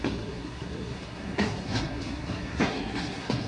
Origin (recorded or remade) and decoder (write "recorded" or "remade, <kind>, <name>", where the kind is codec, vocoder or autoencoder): remade, codec, SNAC